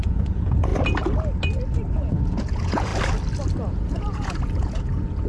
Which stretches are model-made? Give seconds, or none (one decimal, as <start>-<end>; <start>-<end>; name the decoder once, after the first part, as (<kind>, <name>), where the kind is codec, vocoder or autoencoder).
0.0-0.7 (vocoder, Vocos); 2.1-2.9; 3.6-5.3